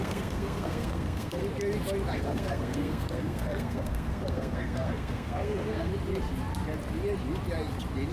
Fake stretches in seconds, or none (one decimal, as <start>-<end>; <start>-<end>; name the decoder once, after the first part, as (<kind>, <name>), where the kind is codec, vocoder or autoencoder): 0.0-1.4 (codec, SNAC); 2.1-5.9